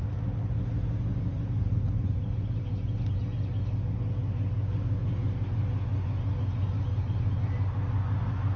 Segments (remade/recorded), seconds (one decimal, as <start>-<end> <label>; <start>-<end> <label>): 0.0-8.6 recorded